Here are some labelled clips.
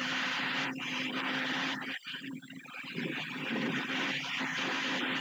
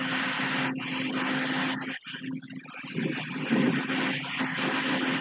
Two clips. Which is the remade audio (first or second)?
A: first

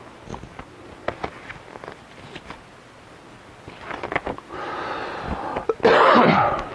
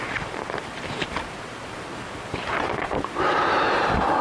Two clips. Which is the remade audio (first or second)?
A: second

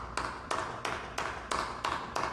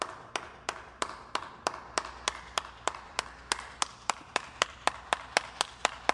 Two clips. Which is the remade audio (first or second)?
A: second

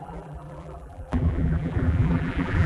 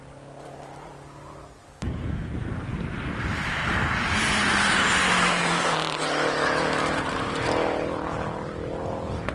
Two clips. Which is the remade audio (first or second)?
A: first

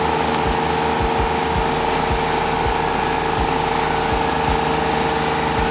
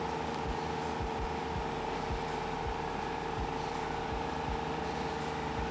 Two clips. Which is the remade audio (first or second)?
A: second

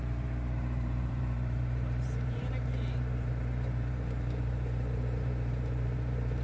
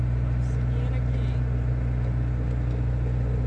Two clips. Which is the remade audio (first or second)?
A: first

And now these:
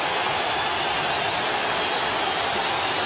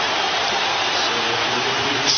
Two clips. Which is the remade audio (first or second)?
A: second